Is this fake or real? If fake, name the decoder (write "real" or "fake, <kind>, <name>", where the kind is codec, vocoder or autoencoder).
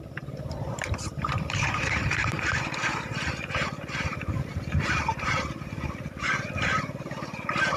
fake, vocoder, BigVGAN v2